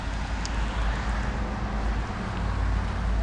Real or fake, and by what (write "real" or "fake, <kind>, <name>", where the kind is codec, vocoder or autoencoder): real